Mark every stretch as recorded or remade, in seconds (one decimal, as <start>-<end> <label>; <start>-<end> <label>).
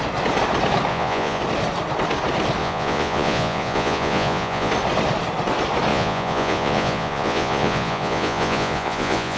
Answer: 0.0-0.9 recorded; 0.9-1.4 remade; 1.4-2.6 recorded; 2.6-4.7 remade; 4.7-5.9 recorded; 5.9-9.4 remade